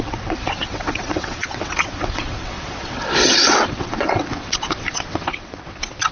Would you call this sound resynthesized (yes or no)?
yes